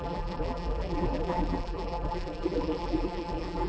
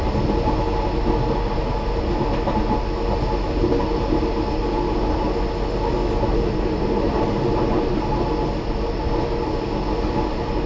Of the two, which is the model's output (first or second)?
first